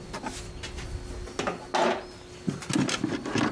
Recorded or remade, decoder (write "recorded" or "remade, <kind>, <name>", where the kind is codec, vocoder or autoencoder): recorded